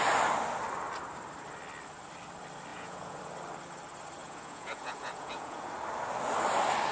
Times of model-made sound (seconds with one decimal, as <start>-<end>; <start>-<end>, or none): 2.7-3.2; 4.2-5.7

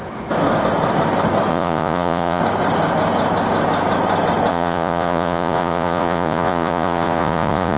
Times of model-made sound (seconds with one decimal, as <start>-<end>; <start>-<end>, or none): 1.5-2.4; 4.5-7.8

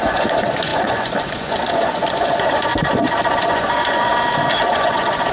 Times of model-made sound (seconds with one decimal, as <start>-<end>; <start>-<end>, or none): 0.0-2.7; 3.4-4.1; 4.7-5.3

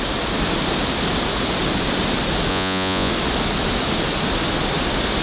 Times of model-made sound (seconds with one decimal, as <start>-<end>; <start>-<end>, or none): 2.5-3.1

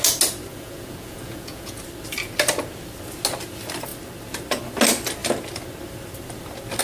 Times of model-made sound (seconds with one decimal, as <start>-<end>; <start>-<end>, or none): 0.5-1.8